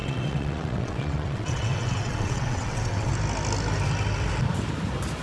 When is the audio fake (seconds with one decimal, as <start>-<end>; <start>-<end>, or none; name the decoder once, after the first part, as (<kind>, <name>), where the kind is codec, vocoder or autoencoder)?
0.0-3.1 (vocoder, WaveNeXt)